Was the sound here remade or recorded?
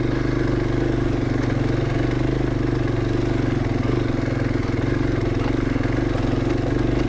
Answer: recorded